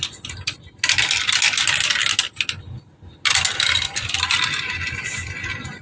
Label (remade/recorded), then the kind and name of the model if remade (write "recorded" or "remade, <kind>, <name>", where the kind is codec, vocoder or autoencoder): recorded